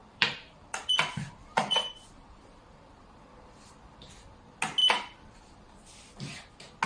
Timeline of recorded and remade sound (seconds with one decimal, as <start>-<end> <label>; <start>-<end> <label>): 0.0-4.1 remade; 4.1-4.8 recorded; 4.8-6.5 remade; 6.5-6.9 recorded